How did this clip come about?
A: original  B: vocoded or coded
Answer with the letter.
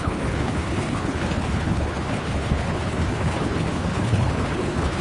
B